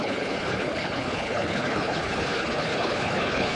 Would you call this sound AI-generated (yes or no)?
yes